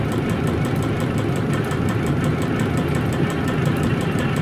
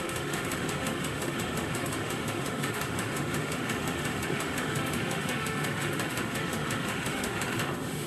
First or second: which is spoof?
second